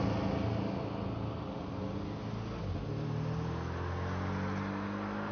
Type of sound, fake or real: real